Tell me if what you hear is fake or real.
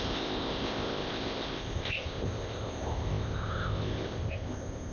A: fake